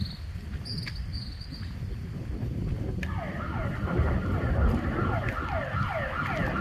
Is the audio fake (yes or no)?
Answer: no